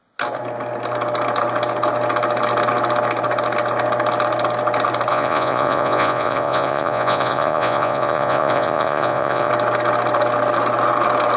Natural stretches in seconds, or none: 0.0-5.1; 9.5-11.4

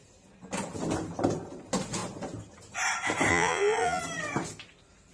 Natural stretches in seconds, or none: 0.0-3.3; 4.0-5.1

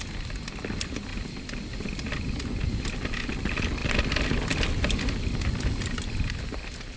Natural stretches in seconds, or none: 0.0-7.0

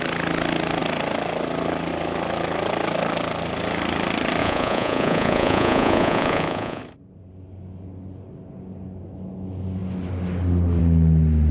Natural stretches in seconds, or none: 0.0-4.4; 6.8-11.5

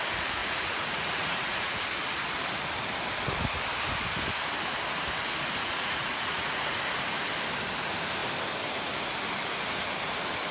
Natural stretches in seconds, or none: 0.0-0.4; 1.8-5.6; 6.8-10.5

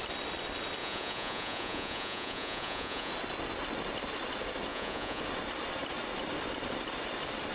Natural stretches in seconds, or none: 0.0-0.8; 3.1-4.7; 5.2-7.5

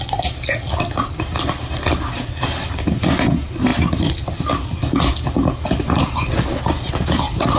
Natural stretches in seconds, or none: 0.0-7.6